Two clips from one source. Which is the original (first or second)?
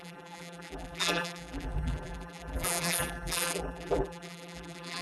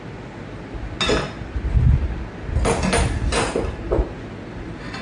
second